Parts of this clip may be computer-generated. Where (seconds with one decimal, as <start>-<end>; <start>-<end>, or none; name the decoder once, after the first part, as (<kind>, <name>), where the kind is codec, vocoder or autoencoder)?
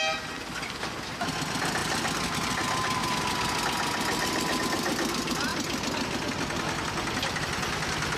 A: none